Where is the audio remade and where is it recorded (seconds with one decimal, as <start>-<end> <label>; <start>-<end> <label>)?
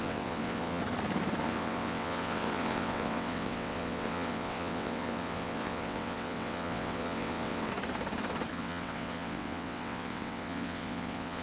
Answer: 0.0-0.8 remade; 0.8-1.4 recorded; 1.4-7.7 remade; 7.7-8.5 recorded; 8.5-11.4 remade